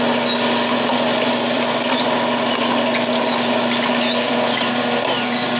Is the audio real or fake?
real